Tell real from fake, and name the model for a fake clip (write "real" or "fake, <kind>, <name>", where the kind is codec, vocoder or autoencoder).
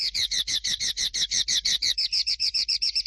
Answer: fake, vocoder, BigVGAN v2